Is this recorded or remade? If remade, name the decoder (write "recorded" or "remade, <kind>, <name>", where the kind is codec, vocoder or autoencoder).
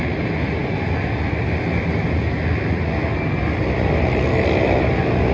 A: recorded